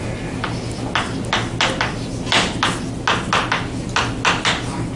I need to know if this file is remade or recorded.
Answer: recorded